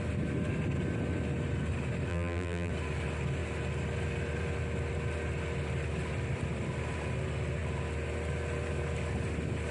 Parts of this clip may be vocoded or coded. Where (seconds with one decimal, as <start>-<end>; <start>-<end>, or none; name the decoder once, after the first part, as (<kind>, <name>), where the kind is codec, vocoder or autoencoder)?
2.1-2.7 (vocoder, BigVGAN v2)